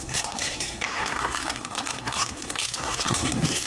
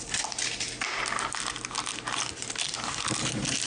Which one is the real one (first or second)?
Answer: second